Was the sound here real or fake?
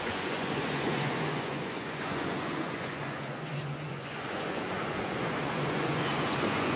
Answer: fake